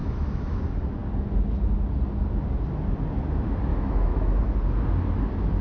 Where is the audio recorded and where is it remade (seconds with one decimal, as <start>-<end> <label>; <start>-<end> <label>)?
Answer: 0.0-0.6 remade; 0.6-3.7 recorded; 3.7-4.4 remade; 4.4-5.6 recorded